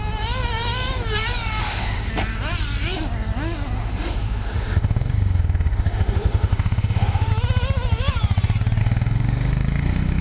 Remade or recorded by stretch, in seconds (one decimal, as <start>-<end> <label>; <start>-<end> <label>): 0.0-1.6 recorded; 1.6-2.1 remade; 2.1-3.8 recorded; 3.8-7.3 remade; 7.3-8.8 recorded; 8.8-10.2 remade